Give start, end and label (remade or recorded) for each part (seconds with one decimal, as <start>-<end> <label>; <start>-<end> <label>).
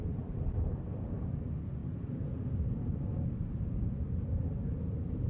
0.0-5.3 recorded